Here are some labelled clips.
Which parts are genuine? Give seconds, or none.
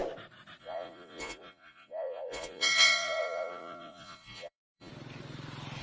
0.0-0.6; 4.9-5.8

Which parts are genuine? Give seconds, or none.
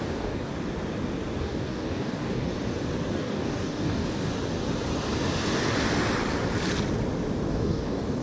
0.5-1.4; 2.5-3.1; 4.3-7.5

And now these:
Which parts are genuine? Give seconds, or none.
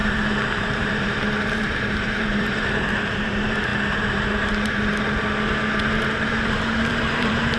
4.9-5.8